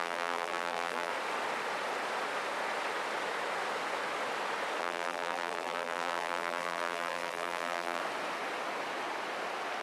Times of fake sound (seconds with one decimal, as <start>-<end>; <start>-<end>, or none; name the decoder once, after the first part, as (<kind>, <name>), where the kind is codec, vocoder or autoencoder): 0.0-1.1 (vocoder, BigVGAN v2); 4.8-8.0